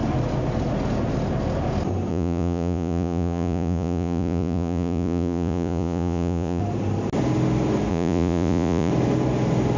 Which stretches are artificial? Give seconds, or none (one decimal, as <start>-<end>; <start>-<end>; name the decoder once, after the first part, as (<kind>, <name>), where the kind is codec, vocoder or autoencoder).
2.1-6.6 (vocoder, Vocos); 7.9-8.9